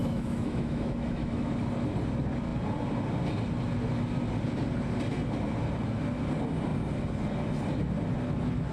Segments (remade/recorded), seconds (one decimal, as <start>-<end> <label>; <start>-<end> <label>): 0.0-1.5 remade; 1.5-8.7 recorded